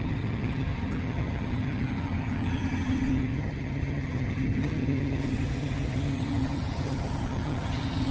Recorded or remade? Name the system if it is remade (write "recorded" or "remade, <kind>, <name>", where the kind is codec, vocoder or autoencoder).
remade, vocoder, HiFi-GAN